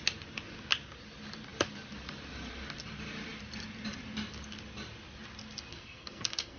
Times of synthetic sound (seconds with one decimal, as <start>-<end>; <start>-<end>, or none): 5.7-6.6